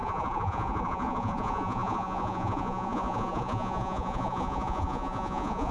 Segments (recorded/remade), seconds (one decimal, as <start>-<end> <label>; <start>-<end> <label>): 0.0-5.7 remade